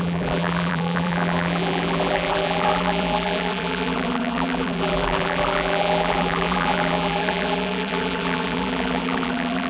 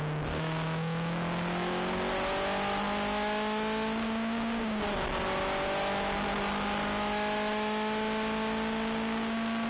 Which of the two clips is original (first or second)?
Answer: second